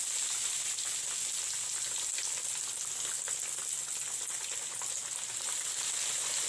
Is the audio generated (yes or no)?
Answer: no